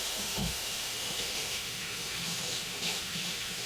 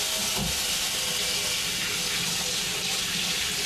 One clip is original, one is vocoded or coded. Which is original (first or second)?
second